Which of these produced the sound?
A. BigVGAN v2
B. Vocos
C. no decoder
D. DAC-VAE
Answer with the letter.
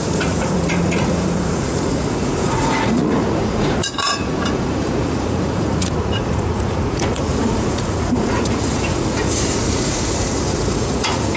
B